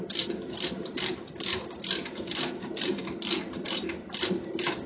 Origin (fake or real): real